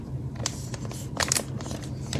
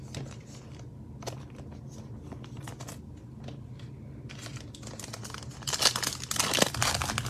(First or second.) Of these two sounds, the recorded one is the second